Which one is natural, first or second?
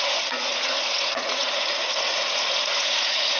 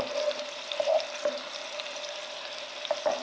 second